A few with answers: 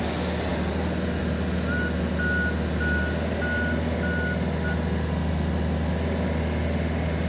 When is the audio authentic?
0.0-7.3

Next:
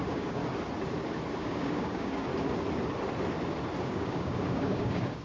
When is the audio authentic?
0.4-1.4; 2.3-3.8

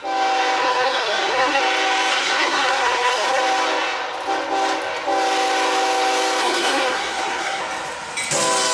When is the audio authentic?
0.0-0.6; 1.6-2.1; 3.4-6.4; 7.6-8.7

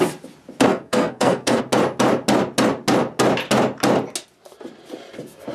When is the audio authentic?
0.0-0.7; 1.6-5.5

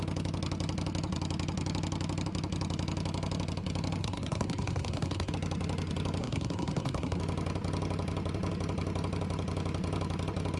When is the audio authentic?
0.0-4.0; 5.3-6.2; 7.2-10.6

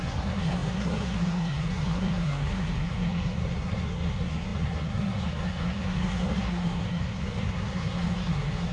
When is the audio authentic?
none

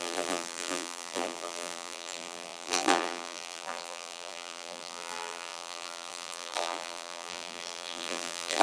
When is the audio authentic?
none

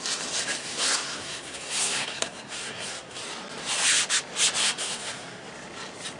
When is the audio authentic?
0.0-0.6; 3.2-4.6; 5.5-6.2